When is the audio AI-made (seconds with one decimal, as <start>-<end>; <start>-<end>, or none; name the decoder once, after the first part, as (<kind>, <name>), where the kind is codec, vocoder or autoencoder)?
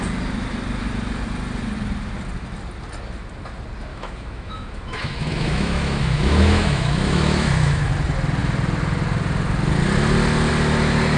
3.9-7.9 (autoencoder, DAC-VAE)